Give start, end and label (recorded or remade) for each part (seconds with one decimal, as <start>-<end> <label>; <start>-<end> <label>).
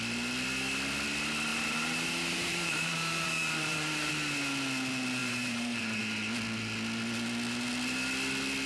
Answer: 0.0-1.5 recorded; 1.5-4.1 remade; 4.1-5.2 recorded; 5.2-6.0 remade; 6.0-8.7 recorded